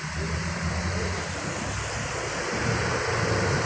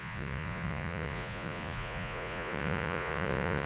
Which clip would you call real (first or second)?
first